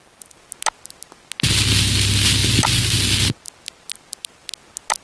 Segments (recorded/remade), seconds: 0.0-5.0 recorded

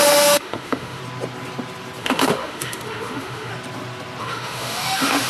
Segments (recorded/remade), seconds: 0.0-1.0 remade; 1.0-2.0 recorded; 2.0-3.5 remade; 3.5-4.2 recorded; 4.2-5.3 remade

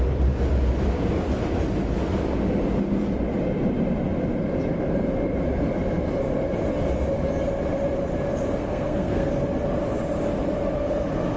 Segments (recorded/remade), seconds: 0.0-8.6 recorded; 8.6-9.3 remade; 9.3-11.4 recorded

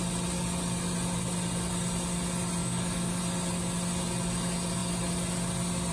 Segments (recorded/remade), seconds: 0.0-2.6 recorded; 2.6-3.2 remade; 3.2-5.9 recorded

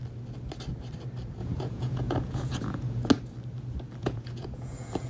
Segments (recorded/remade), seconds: 0.0-1.4 recorded; 1.4-3.1 remade; 3.1-4.0 recorded; 4.0-5.1 remade

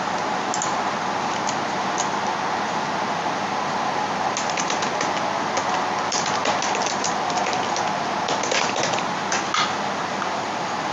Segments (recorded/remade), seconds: 0.0-10.9 recorded

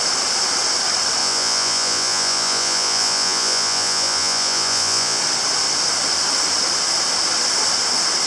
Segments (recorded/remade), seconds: 0.0-1.2 recorded; 1.2-5.2 remade; 5.2-8.3 recorded

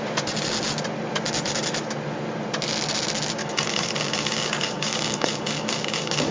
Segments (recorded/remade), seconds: 0.0-3.4 recorded; 3.4-6.3 remade